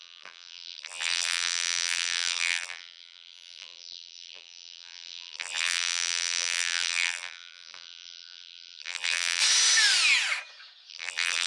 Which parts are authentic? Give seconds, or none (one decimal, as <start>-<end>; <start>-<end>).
9.4-10.9